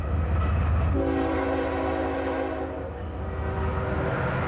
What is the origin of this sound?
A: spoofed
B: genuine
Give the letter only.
B